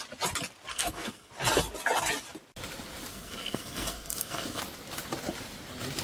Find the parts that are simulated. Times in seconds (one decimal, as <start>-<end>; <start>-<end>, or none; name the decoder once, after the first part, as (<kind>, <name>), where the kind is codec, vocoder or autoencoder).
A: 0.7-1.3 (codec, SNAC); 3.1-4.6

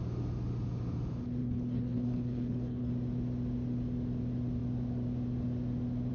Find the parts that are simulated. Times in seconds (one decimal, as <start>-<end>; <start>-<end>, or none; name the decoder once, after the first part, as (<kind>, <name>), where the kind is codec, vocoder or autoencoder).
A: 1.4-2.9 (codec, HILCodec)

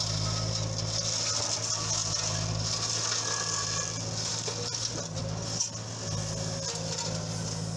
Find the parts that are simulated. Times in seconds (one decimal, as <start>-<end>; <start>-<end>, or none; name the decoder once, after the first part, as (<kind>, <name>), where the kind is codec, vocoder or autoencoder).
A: none